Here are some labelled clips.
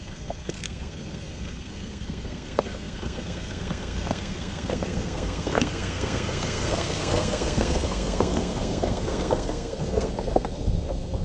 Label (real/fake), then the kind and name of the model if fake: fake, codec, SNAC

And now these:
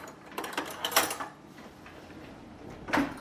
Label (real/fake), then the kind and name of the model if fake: fake, vocoder, BigVGAN v2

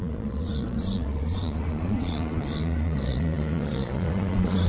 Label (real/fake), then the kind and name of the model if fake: fake, vocoder, Vocos